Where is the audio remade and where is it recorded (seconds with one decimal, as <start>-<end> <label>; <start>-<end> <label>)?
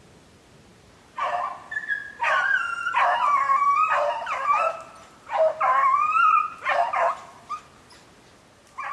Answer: 0.0-8.9 recorded